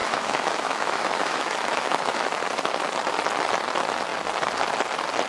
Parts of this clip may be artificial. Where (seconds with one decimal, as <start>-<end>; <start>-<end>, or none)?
0.0-2.4